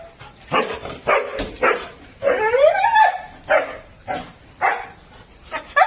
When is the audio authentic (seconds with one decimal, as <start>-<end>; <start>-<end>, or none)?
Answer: 0.0-5.9